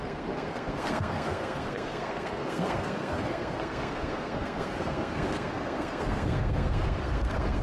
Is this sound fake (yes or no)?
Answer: yes